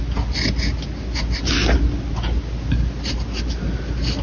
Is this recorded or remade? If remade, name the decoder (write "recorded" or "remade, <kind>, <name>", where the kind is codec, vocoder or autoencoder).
recorded